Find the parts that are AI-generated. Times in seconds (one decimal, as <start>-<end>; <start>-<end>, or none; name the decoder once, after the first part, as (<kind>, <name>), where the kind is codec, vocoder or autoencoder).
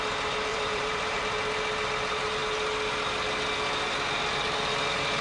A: 0.5-1.2 (vocoder, BigVGAN v2)